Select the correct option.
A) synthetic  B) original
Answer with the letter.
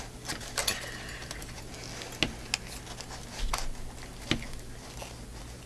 B